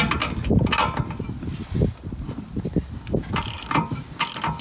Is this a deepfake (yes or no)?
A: no